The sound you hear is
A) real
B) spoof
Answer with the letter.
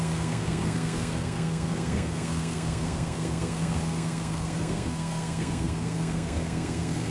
B